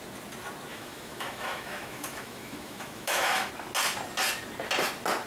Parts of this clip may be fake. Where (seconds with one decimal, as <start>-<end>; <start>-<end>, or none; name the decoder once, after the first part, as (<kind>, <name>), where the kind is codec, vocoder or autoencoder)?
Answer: 0.7-3.5 (autoencoder, DAC-VAE)